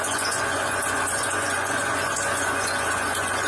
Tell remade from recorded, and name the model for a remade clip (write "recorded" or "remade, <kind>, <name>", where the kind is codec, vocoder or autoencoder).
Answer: remade, vocoder, Vocos